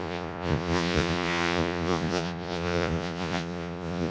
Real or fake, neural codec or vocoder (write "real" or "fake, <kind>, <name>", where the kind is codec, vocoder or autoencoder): fake, vocoder, Vocos